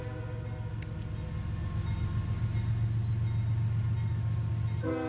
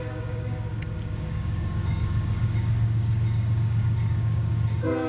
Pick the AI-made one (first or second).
second